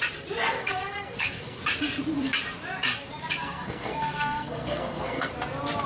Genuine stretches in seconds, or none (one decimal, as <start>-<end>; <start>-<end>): 0.0-0.6; 1.6-3.4; 5.3-5.9